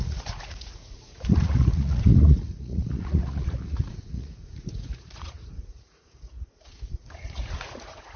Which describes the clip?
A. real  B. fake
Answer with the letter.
B